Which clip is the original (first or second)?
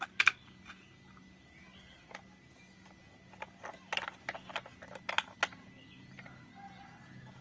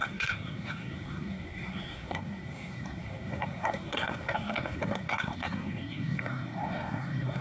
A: first